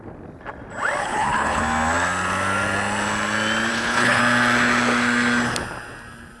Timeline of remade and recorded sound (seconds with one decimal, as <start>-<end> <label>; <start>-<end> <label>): 0.0-1.0 recorded; 1.0-1.6 remade; 1.6-3.7 recorded; 3.7-4.2 remade; 4.2-6.4 recorded